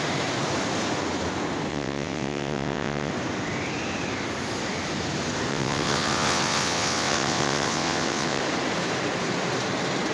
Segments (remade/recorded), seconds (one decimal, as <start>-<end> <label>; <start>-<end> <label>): 0.0-1.7 recorded; 1.7-3.1 remade; 3.1-5.5 recorded; 5.5-8.4 remade; 8.4-10.1 recorded